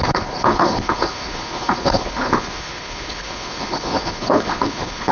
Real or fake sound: fake